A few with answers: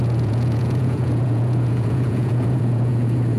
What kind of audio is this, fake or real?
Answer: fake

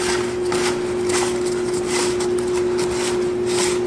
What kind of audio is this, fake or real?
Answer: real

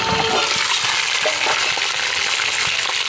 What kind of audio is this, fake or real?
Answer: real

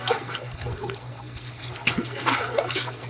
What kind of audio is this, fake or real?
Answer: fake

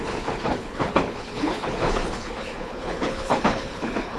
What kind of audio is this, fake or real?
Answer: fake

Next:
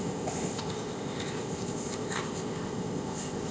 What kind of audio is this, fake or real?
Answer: fake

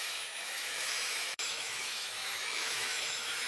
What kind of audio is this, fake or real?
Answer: fake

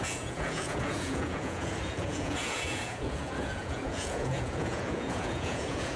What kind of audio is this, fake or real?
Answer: fake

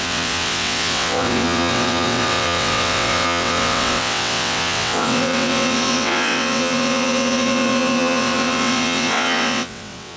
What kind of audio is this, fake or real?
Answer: fake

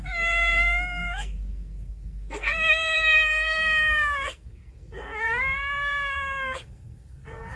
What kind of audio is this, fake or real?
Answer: fake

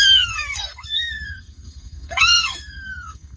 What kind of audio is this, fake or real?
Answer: fake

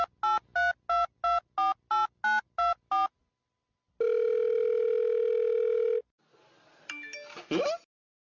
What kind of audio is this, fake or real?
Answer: real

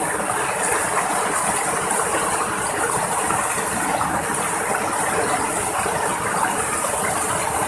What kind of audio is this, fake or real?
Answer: real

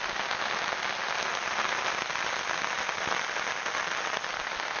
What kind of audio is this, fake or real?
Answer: real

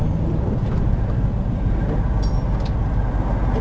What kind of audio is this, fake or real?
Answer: real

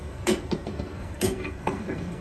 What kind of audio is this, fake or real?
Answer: fake